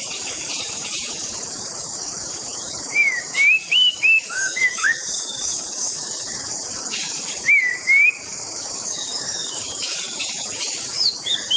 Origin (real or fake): fake